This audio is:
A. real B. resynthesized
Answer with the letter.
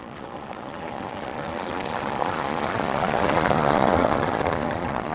B